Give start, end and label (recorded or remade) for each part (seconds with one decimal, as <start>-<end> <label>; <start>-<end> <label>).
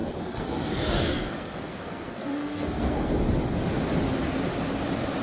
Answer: 0.0-3.1 remade; 3.1-5.2 recorded